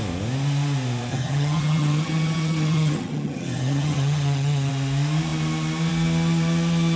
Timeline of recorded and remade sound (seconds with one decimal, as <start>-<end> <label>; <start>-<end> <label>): 0.0-1.1 recorded; 1.1-4.7 remade; 4.7-7.0 recorded